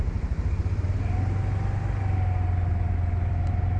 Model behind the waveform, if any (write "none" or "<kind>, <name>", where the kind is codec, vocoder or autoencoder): none